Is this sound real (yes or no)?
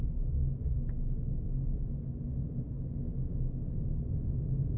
yes